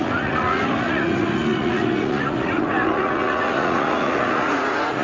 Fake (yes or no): yes